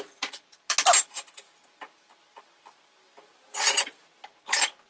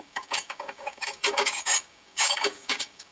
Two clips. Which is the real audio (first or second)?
first